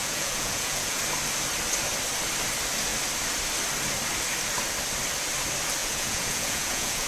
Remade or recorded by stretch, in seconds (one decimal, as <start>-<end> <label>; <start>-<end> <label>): 0.0-1.0 remade; 1.0-5.8 recorded; 5.8-7.1 remade